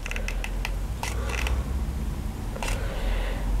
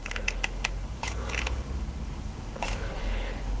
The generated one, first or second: second